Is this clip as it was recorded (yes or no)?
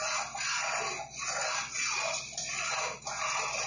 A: yes